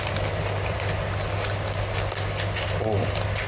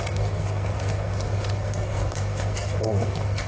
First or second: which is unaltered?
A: first